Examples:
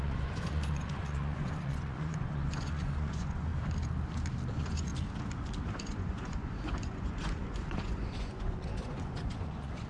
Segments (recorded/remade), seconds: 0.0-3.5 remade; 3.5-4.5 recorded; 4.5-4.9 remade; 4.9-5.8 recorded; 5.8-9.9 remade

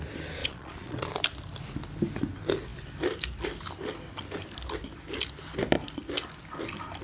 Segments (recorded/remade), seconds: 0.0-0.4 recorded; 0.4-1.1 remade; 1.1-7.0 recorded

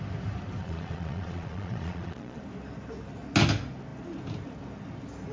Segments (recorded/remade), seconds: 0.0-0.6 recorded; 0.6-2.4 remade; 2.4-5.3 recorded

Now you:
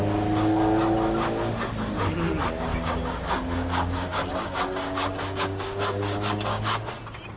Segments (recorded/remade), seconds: 0.0-2.7 recorded; 2.7-6.9 remade; 6.9-7.4 recorded